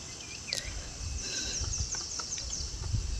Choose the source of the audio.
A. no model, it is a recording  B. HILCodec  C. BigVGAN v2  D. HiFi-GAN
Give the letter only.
A